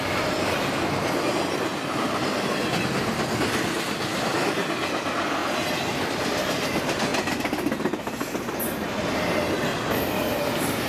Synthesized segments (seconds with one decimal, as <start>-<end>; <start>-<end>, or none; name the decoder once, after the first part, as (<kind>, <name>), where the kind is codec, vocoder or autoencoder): 9.7-10.9 (vocoder, BigVGAN v2)

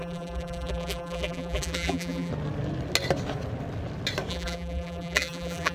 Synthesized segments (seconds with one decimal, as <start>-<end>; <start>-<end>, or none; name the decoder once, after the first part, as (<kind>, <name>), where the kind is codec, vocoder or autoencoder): 0.0-2.3 (vocoder, BigVGAN v2); 4.3-5.7

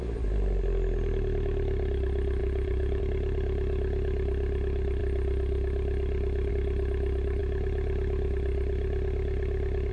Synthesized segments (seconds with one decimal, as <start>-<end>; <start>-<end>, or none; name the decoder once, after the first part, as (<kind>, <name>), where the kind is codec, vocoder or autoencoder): 2.4-3.0 (vocoder, Vocos)

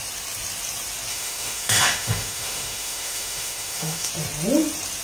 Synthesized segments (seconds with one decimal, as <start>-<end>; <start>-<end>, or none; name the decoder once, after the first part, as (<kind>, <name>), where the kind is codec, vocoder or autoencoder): 1.1-4.1 (autoencoder, DAC-VAE)

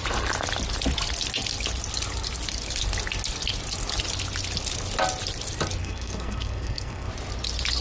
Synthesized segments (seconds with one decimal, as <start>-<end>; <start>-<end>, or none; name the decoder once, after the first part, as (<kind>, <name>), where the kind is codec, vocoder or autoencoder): 5.8-7.1 (codec, SNAC)